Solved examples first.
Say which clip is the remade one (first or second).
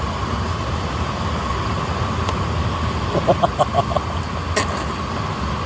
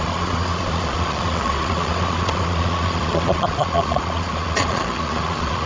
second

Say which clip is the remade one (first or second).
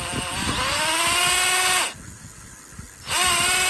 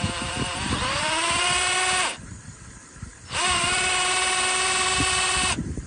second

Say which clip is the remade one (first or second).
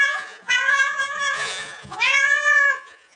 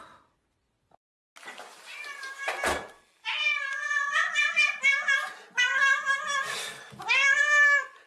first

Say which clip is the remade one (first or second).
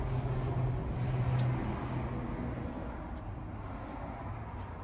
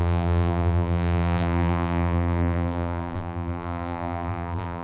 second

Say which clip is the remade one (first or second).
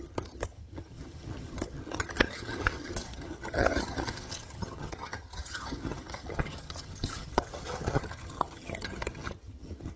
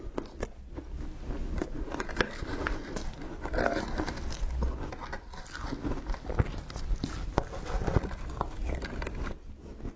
first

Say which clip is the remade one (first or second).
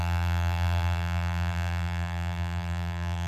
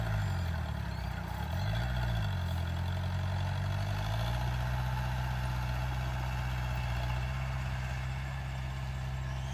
first